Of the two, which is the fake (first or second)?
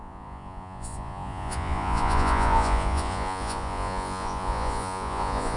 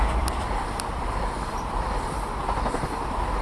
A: first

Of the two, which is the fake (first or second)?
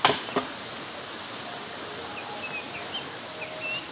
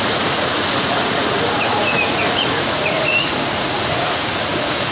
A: second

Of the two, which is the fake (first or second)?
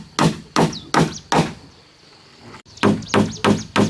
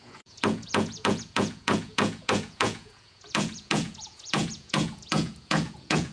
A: second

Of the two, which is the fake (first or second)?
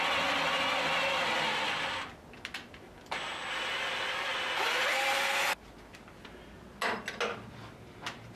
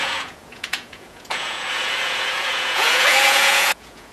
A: second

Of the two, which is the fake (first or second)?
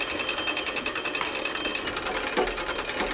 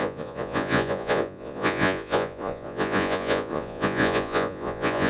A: second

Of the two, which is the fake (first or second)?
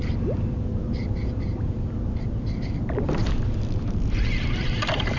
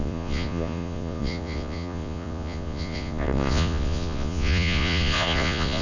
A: second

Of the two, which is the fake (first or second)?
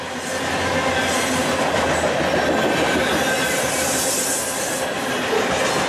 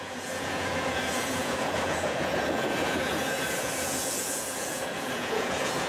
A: second